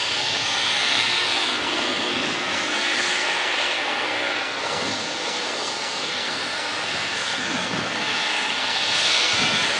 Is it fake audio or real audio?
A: fake